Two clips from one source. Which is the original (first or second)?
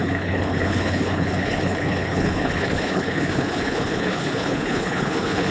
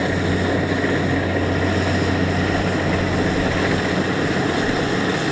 second